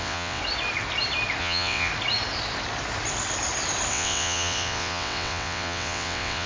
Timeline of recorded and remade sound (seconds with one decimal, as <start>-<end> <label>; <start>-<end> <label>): 0.0-0.4 remade; 0.4-1.4 recorded; 1.4-1.9 remade; 1.9-3.9 recorded; 3.9-6.5 remade